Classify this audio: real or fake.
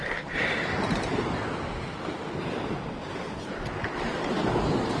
real